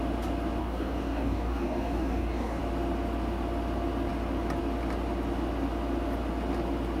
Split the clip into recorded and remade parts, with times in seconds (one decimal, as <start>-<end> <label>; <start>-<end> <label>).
0.0-0.6 recorded; 0.6-2.6 remade; 2.6-7.0 recorded

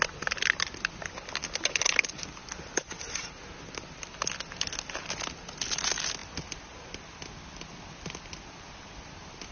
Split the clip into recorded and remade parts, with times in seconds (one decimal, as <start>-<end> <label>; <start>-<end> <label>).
0.0-9.5 recorded

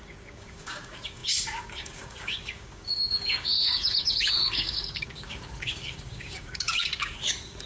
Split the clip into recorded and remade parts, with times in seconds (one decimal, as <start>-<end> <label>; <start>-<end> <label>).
0.0-7.7 remade

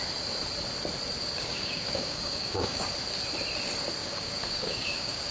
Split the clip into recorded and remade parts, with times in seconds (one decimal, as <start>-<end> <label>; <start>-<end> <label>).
0.0-1.2 recorded; 1.2-2.9 remade; 2.9-4.0 recorded; 4.0-5.3 remade

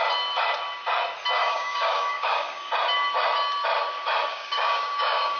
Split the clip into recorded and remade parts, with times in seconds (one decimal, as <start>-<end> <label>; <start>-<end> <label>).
0.0-1.4 recorded; 1.4-2.7 remade; 2.7-4.3 recorded; 4.3-5.4 remade